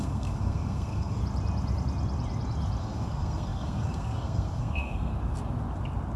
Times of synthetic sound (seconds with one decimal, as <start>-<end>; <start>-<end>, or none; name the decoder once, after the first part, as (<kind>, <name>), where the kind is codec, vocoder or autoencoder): 0.0-1.2 (codec, SNAC); 2.8-5.1